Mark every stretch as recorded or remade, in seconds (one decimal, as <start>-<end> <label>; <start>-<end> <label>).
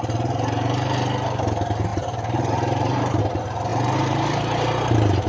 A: 0.0-1.9 recorded; 1.9-3.2 remade; 3.2-3.7 recorded; 3.7-5.3 remade